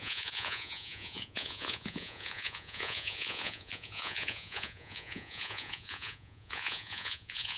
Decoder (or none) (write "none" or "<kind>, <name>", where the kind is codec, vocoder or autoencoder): vocoder, Vocos